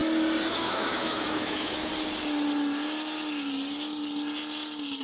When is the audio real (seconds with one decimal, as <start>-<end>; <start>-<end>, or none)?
0.0-0.5; 1.9-5.0